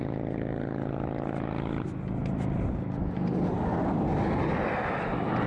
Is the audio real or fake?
real